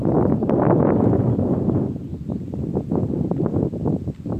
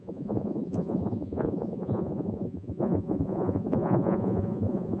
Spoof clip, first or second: second